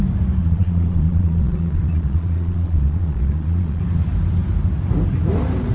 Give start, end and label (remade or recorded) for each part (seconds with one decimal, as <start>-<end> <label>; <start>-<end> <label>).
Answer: 0.0-0.4 recorded; 0.4-3.8 remade; 3.8-5.7 recorded